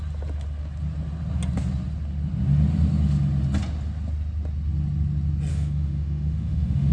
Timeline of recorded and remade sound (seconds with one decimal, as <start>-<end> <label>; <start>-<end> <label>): 0.0-5.5 recorded; 5.5-6.9 remade